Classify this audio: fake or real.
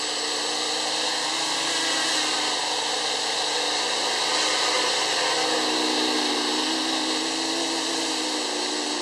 real